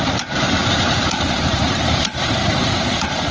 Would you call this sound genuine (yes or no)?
no